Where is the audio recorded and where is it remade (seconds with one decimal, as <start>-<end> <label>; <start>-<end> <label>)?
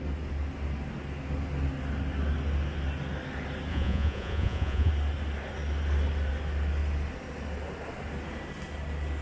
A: 0.0-3.7 recorded; 3.7-4.9 remade; 4.9-9.2 recorded